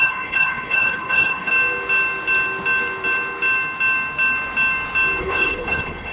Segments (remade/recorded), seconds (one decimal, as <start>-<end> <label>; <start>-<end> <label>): 0.0-1.5 remade; 1.5-5.2 recorded; 5.2-6.1 remade